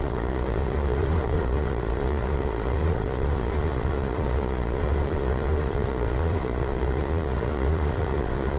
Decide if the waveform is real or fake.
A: fake